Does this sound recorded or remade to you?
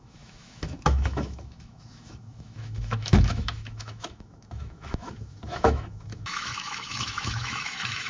remade